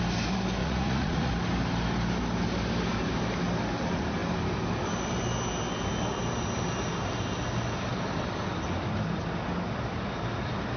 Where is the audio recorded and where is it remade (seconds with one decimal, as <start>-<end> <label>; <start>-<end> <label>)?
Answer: 0.0-0.6 recorded; 0.6-1.3 remade; 1.3-10.8 recorded